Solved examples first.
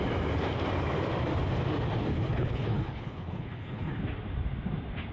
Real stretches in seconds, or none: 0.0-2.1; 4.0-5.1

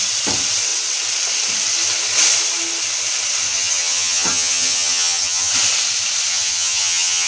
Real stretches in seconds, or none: 0.0-3.5; 5.5-6.3

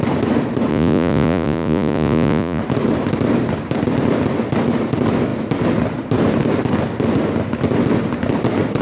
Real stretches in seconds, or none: 0.0-0.7; 2.6-8.8

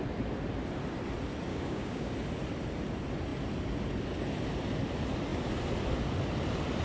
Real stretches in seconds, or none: 0.0-1.5; 2.1-6.8